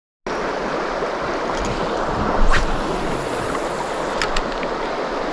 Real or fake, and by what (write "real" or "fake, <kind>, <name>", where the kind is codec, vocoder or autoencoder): real